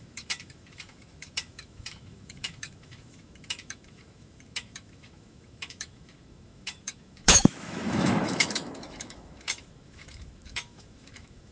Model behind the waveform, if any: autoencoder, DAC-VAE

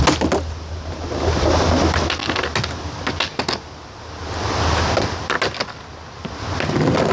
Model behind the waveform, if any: none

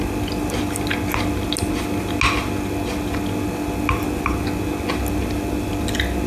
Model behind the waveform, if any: none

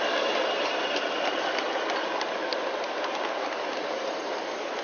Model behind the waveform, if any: none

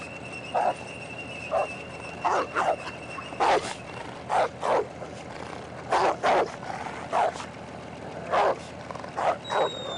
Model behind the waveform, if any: none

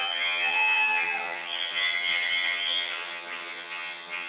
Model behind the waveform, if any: vocoder, HiFi-GAN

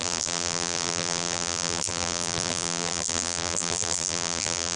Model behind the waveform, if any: vocoder, BigVGAN v2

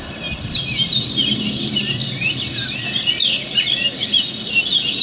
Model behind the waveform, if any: none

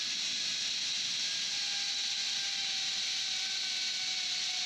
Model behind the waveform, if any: none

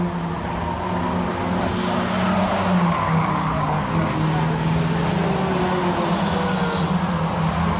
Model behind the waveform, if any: none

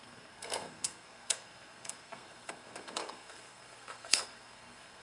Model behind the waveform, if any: codec, SNAC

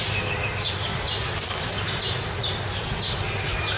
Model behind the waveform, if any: none